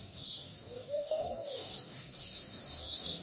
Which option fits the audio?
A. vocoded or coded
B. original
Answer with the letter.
A